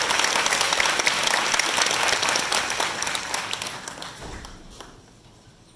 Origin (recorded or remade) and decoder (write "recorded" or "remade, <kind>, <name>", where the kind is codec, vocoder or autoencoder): recorded